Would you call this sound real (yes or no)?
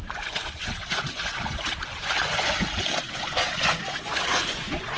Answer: no